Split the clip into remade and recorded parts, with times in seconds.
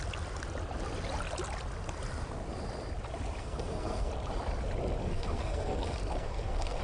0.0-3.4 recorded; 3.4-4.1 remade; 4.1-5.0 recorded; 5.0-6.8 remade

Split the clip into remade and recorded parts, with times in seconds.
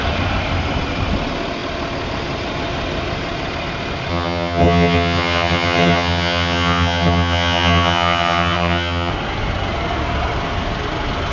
0.0-4.1 recorded; 4.1-9.1 remade; 9.1-11.3 recorded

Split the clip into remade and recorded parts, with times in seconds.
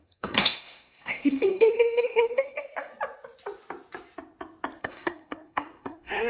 0.0-2.9 remade; 2.9-4.8 recorded; 4.8-6.3 remade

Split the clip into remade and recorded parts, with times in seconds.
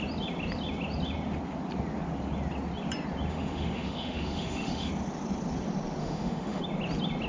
0.0-3.3 recorded; 3.3-4.9 remade; 4.9-6.0 recorded; 6.0-6.6 remade; 6.6-7.3 recorded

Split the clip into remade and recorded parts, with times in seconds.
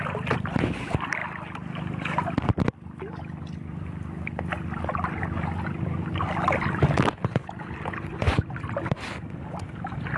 0.0-10.2 recorded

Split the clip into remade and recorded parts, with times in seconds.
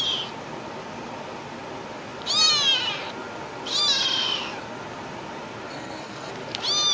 0.0-5.7 recorded; 5.7-6.3 remade; 6.3-6.9 recorded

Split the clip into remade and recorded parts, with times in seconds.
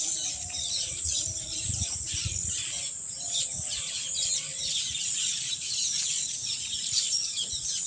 0.0-7.9 remade